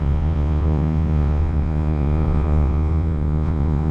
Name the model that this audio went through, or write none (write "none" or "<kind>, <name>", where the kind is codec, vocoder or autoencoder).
vocoder, Vocos